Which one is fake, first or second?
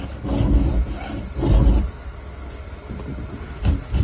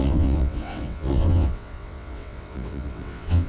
second